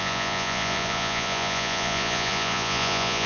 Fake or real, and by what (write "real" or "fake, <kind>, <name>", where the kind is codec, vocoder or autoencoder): fake, vocoder, Vocos